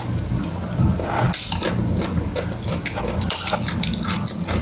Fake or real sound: real